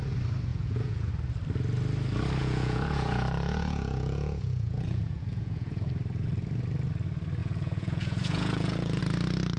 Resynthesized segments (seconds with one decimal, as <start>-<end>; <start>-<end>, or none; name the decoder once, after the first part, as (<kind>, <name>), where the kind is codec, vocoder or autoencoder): 0.5-1.1 (vocoder, Vocos); 2.4-5.9; 7.4-9.0